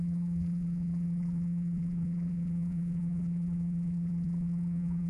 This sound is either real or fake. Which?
fake